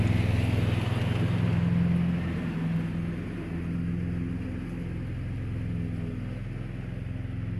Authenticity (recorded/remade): recorded